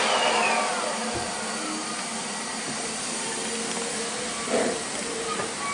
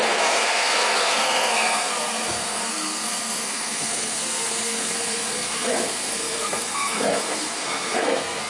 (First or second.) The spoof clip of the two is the second